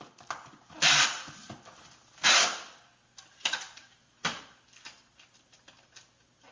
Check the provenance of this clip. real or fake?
real